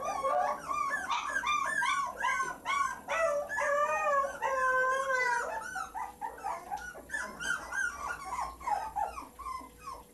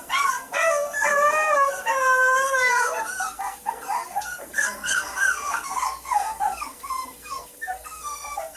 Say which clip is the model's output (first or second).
second